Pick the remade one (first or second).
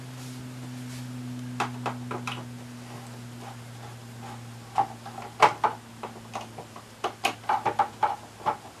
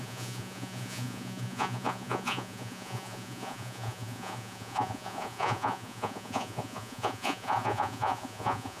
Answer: second